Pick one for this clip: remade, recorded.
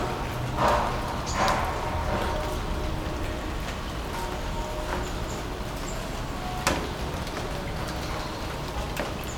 recorded